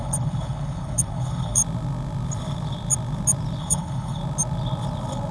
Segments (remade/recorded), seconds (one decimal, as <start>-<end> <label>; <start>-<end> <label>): 0.0-1.6 remade; 1.6-3.6 recorded; 3.6-4.2 remade; 4.2-5.3 recorded